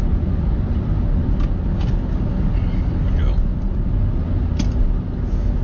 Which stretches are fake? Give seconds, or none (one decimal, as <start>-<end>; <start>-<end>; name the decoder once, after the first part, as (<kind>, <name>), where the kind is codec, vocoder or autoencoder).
none